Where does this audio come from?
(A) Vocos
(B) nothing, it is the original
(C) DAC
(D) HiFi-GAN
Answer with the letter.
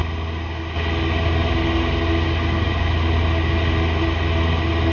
B